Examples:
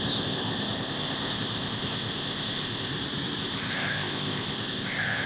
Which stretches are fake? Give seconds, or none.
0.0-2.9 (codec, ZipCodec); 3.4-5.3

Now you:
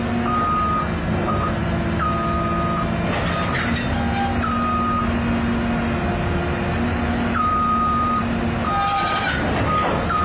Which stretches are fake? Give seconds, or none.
7.5-8.2 (vocoder, BigVGAN v2)

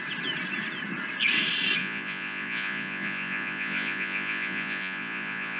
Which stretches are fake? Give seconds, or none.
1.8-5.6 (vocoder, Vocos)

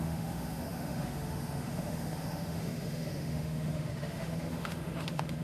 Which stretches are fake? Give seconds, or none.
0.0-5.4 (autoencoder, DAC-VAE)

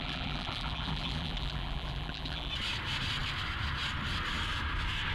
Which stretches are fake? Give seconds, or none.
0.0-2.5 (vocoder, BigVGAN v2)